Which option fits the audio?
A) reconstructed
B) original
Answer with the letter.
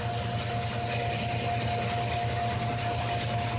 B